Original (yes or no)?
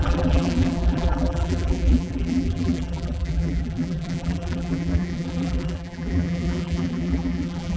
no